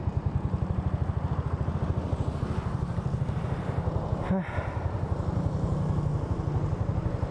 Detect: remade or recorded recorded